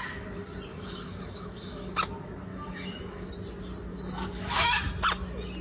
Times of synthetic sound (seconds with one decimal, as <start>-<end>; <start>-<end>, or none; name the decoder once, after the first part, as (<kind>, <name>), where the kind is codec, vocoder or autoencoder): 0.7-1.9 (autoencoder, DAC-VAE); 2.5-3.3; 3.9-4.9